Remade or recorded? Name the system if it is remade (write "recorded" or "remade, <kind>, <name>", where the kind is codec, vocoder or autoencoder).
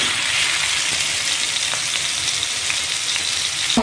recorded